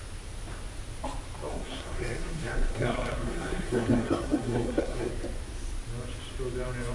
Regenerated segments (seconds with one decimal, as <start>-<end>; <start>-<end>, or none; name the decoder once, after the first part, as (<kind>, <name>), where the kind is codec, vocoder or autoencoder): 1.5-5.1 (codec, SNAC)